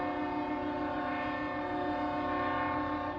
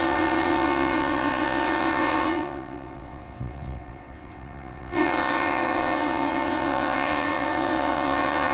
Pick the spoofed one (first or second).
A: second